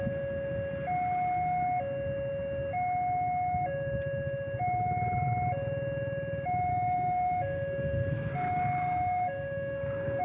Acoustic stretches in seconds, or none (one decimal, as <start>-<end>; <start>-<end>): 0.0-6.7